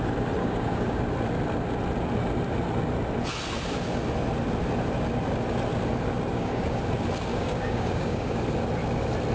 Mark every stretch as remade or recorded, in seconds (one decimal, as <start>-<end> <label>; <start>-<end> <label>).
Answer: 0.0-0.4 recorded; 0.4-1.0 remade; 1.0-6.3 recorded; 6.3-6.8 remade; 6.8-7.3 recorded; 7.3-8.4 remade; 8.4-9.3 recorded